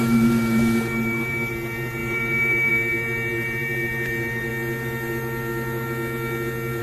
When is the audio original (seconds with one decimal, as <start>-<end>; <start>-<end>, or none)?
4.5-6.8